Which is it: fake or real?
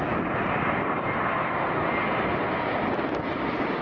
real